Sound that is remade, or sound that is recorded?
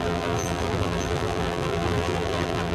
remade